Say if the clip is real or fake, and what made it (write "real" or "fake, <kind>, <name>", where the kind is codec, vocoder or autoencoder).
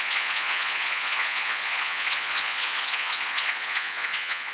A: fake, vocoder, Vocos